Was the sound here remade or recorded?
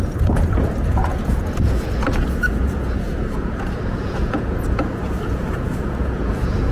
remade